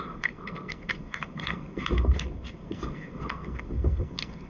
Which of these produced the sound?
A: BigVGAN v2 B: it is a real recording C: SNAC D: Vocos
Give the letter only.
C